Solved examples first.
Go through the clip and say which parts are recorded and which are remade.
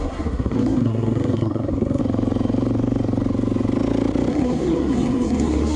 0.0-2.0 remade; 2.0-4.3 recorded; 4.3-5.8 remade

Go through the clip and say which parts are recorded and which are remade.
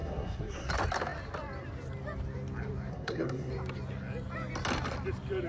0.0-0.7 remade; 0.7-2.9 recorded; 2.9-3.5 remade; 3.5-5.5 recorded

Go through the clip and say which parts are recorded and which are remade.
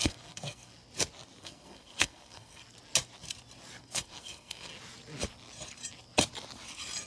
0.0-0.7 remade; 0.7-1.4 recorded; 1.4-2.6 remade; 2.6-3.8 recorded; 3.8-4.7 remade; 4.7-7.1 recorded